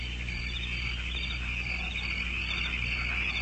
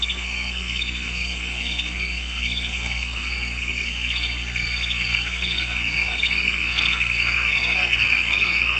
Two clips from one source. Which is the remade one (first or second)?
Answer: second